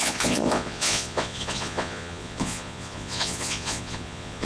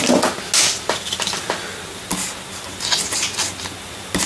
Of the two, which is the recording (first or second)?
second